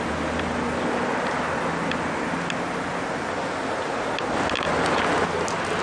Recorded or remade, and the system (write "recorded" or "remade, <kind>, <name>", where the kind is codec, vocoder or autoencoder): recorded